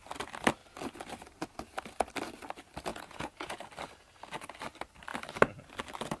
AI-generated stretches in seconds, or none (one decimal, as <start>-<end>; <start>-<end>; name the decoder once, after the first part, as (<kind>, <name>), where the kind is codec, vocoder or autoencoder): 2.9-3.6 (vocoder, Vocos)